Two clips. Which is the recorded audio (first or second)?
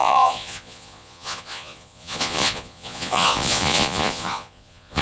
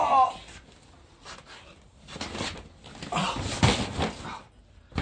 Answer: second